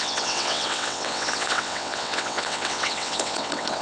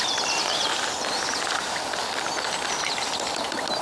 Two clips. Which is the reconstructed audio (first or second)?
first